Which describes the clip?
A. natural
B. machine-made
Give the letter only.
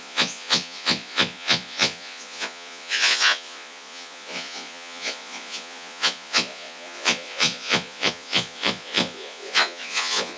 B